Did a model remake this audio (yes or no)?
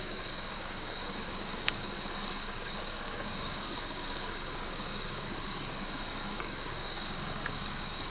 yes